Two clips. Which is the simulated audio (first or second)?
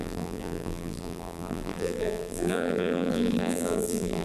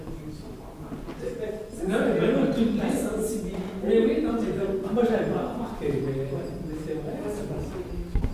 first